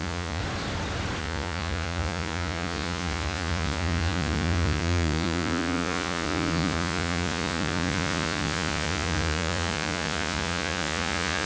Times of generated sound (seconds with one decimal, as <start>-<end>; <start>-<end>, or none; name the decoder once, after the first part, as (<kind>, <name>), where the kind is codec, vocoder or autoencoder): 0.0-0.4 (vocoder, Vocos); 1.2-11.5